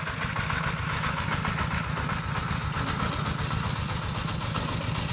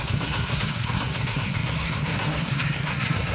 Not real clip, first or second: second